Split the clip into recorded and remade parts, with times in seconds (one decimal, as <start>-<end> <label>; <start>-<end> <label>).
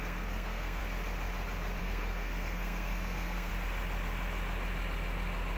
0.0-0.8 remade; 0.8-1.8 recorded; 1.8-3.5 remade; 3.5-5.6 recorded